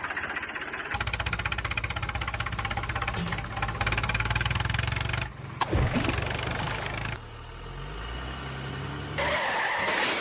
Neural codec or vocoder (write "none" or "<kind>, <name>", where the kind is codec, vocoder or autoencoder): none